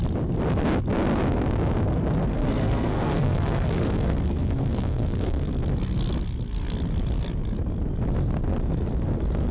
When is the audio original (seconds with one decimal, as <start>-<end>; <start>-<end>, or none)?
0.0-2.3; 5.5-9.5